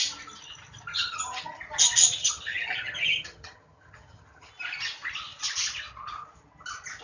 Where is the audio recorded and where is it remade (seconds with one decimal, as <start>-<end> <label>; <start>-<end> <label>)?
0.0-0.9 recorded; 0.9-1.6 remade; 1.6-2.2 recorded; 2.2-4.5 remade; 4.5-7.0 recorded